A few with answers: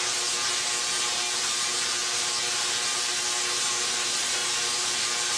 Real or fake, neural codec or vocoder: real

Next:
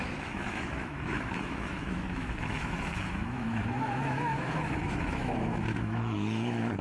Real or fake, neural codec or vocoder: fake, autoencoder, DAC-VAE